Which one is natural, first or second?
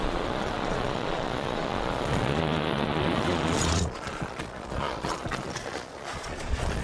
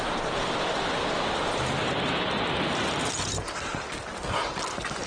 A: second